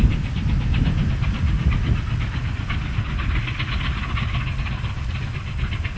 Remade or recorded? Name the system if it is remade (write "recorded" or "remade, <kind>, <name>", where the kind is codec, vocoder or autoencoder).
recorded